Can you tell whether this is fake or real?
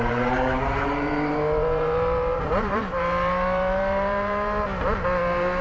fake